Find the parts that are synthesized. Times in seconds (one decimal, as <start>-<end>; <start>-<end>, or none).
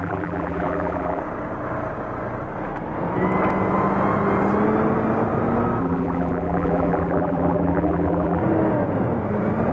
0.0-1.2; 5.8-8.4